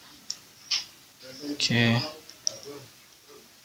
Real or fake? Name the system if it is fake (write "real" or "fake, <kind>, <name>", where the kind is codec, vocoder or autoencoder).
real